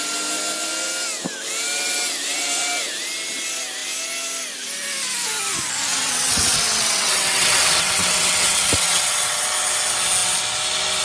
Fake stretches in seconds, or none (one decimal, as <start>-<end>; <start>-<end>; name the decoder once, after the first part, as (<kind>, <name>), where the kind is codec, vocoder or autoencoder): 5.9-9.4 (vocoder, WaveNeXt)